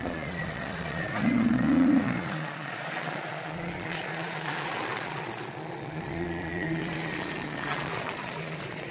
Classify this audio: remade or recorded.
remade